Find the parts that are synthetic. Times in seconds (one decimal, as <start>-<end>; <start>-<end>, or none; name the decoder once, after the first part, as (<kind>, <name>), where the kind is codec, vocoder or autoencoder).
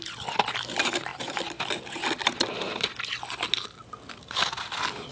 none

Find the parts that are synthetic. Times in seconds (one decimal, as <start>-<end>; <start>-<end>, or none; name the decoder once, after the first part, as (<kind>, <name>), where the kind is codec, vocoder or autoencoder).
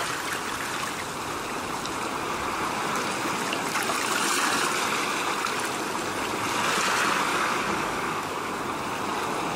7.3-8.5 (codec, DAC)